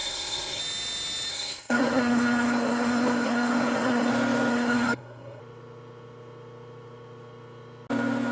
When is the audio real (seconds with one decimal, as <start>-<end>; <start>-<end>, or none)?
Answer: 0.6-1.3; 4.1-4.5; 5.4-8.3